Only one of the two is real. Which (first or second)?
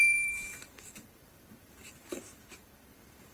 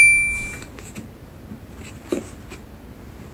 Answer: second